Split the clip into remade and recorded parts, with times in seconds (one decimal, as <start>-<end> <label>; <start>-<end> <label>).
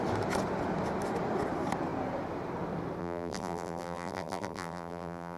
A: 0.0-3.0 recorded; 3.0-5.4 remade